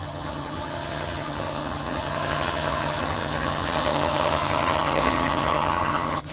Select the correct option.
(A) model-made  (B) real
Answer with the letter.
A